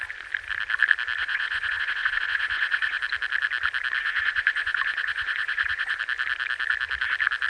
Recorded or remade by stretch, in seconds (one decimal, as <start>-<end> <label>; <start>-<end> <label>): 0.0-1.2 recorded; 1.2-3.0 remade; 3.0-4.0 recorded; 4.0-6.0 remade; 6.0-7.5 recorded